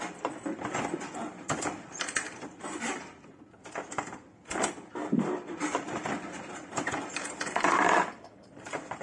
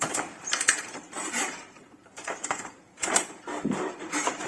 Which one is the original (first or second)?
first